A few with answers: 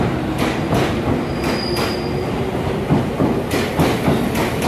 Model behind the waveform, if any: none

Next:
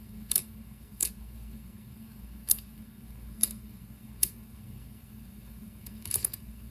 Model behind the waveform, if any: codec, SNAC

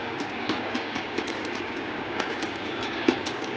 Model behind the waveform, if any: codec, DAC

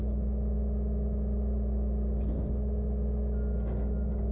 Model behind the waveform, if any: none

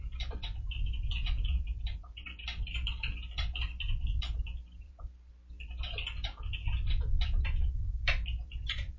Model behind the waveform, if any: vocoder, BigVGAN v2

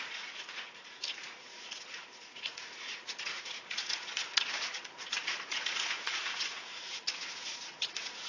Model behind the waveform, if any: vocoder, Vocos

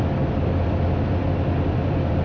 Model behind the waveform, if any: vocoder, BigVGAN v2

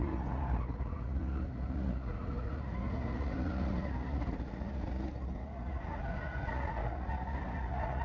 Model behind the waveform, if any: vocoder, Vocos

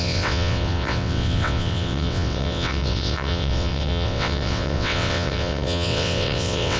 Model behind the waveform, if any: vocoder, WaveNeXt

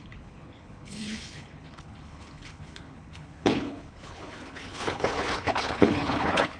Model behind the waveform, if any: codec, HILCodec